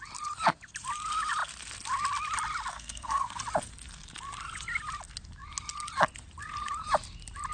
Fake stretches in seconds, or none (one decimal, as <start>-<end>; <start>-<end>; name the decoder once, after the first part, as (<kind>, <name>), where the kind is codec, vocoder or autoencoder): 2.7-3.4 (codec, SNAC)